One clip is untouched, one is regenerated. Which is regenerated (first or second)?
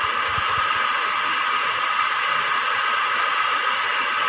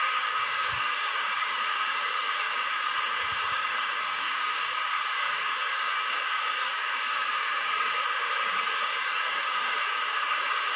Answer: second